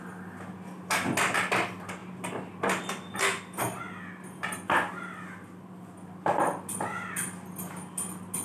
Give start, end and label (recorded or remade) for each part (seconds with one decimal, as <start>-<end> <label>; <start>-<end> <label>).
0.0-8.4 recorded